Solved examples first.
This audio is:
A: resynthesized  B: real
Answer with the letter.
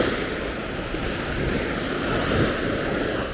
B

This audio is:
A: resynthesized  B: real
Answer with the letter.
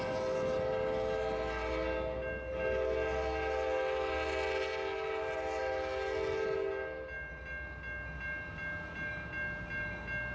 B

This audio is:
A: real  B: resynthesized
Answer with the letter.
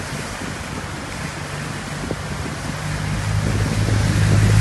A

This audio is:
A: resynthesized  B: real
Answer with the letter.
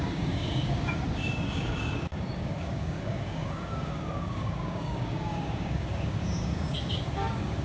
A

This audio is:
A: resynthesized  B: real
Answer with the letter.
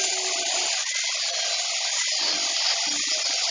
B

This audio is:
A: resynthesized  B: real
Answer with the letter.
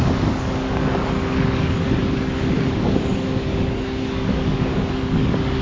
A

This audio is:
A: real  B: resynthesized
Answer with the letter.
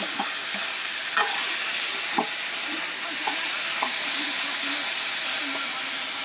A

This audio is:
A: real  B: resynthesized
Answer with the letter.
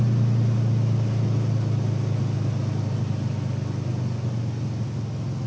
A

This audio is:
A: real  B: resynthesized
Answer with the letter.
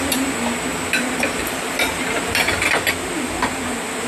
A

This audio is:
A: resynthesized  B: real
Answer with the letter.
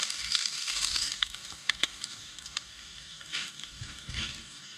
A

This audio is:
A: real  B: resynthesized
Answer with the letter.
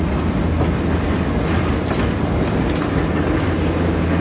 A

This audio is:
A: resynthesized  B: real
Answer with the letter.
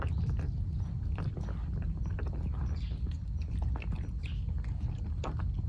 B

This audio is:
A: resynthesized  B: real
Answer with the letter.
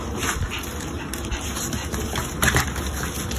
B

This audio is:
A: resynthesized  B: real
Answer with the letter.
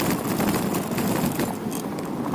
B